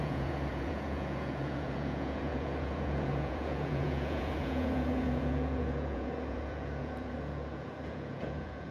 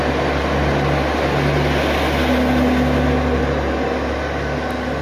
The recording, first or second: second